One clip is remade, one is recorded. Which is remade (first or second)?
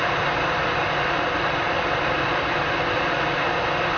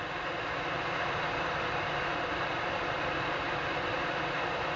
second